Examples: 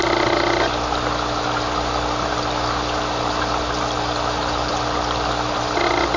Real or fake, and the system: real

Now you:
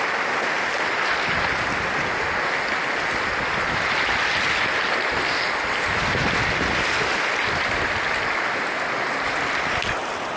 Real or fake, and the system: real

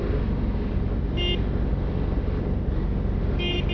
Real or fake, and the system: real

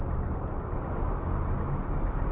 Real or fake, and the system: real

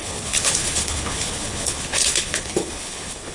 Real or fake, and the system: fake, codec, HILCodec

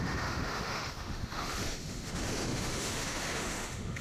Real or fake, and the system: fake, autoencoder, DAC-VAE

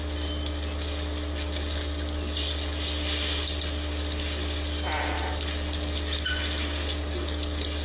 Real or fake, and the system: real